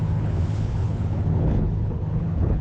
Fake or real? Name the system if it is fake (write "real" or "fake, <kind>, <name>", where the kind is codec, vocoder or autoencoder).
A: fake, codec, HILCodec